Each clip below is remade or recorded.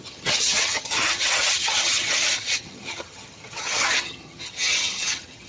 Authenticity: remade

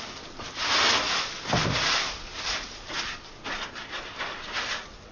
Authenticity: recorded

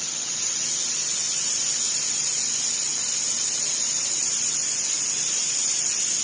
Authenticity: recorded